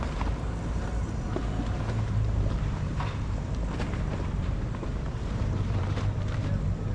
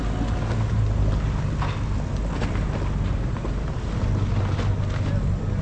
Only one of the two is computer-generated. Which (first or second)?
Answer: first